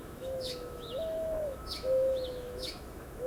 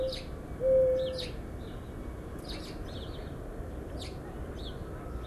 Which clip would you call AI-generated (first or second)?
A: first